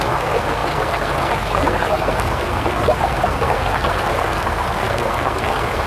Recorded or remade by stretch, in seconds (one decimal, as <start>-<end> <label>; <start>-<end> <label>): 0.0-5.9 remade